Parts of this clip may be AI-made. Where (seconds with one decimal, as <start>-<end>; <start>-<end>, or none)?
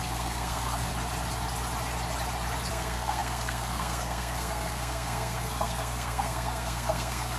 0.0-0.9; 2.7-7.4